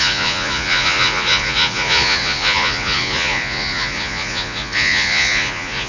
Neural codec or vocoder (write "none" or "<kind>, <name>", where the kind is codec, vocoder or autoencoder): vocoder, Vocos